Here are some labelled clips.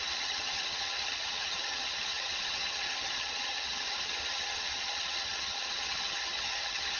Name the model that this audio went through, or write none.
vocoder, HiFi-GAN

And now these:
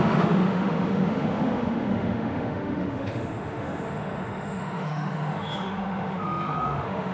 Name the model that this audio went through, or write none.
autoencoder, DAC-VAE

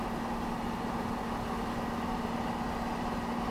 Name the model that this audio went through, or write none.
none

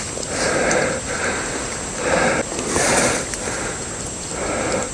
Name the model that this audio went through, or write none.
none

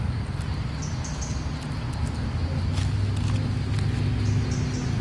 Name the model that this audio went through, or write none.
none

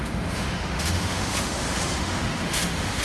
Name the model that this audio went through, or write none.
autoencoder, DAC-VAE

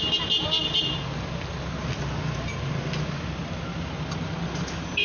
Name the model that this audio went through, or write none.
none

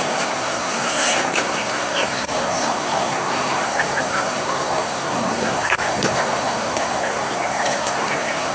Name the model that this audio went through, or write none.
codec, SNAC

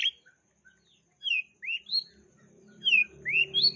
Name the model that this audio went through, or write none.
none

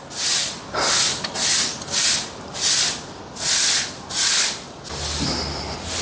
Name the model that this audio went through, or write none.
none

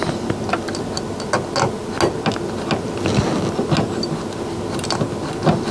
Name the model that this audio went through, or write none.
none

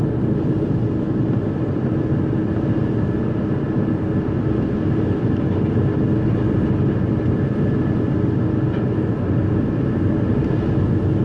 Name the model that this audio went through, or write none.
none